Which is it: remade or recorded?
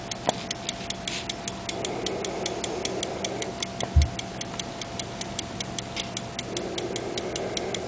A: recorded